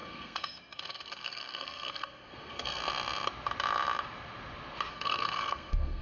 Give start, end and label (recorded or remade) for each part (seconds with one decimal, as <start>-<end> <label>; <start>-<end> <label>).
0.0-2.8 remade; 2.8-4.9 recorded; 4.9-6.0 remade

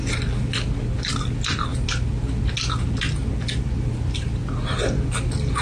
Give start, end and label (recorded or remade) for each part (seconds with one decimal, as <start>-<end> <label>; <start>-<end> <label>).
0.0-5.6 recorded

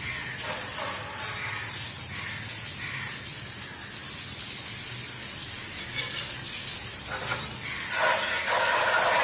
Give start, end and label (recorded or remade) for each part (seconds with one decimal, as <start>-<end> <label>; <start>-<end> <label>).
0.0-9.2 recorded

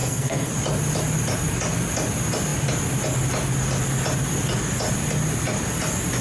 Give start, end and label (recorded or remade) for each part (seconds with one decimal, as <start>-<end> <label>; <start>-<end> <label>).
0.0-0.5 remade; 0.5-6.2 recorded

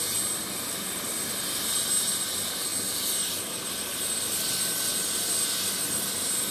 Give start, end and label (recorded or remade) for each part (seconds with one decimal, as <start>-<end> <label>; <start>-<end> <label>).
0.0-6.5 recorded

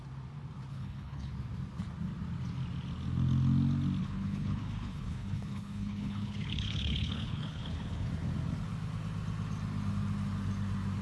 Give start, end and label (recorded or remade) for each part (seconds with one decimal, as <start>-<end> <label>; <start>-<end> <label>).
0.0-0.7 recorded; 0.7-1.3 remade; 1.3-4.0 recorded; 4.0-8.1 remade; 8.1-11.0 recorded